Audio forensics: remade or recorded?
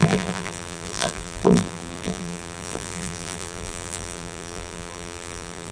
remade